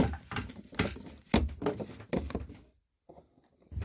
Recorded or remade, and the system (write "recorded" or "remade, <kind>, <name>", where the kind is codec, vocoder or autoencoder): recorded